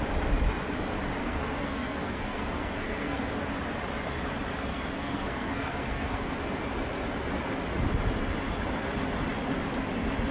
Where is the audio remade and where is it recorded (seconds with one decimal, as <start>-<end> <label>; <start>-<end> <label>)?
0.0-1.2 recorded; 1.2-3.4 remade; 3.4-4.7 recorded; 4.7-6.3 remade; 6.3-10.3 recorded